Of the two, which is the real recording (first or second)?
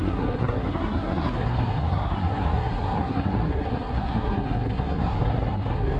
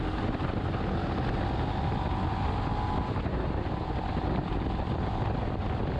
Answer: second